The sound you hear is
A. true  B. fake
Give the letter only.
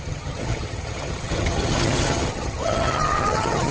B